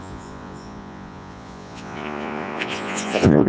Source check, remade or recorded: remade